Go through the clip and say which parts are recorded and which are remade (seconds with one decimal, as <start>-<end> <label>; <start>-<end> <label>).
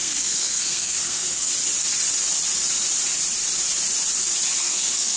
0.0-1.5 remade; 1.5-4.6 recorded; 4.6-5.2 remade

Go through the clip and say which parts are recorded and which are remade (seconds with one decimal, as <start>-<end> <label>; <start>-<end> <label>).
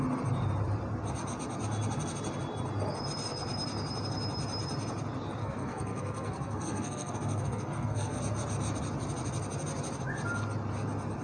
0.0-5.4 recorded; 5.4-8.2 remade; 8.2-11.2 recorded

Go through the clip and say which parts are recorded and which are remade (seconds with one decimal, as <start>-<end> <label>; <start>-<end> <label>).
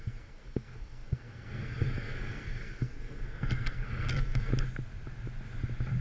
0.0-4.5 remade; 4.5-6.0 recorded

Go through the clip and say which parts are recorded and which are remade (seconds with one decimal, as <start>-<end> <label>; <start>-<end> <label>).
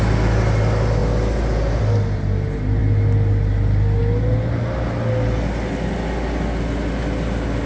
0.0-7.7 recorded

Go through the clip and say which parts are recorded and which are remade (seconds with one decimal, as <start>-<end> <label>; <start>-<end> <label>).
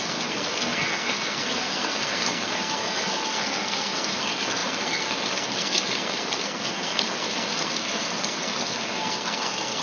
0.0-9.8 remade